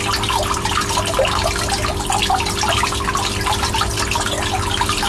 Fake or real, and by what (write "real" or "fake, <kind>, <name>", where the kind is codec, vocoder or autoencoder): real